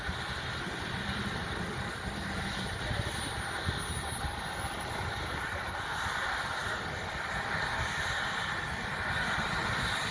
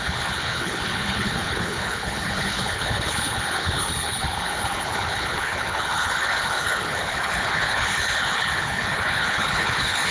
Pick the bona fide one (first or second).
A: first